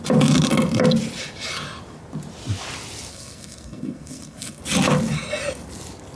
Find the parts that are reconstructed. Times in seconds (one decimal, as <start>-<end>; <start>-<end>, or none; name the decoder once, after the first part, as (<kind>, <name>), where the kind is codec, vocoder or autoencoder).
3.1-4.6 (codec, SNAC)